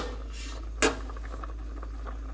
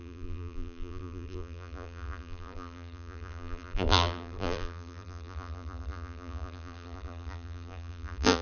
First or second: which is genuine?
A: first